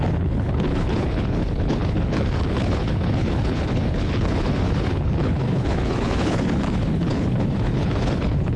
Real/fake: fake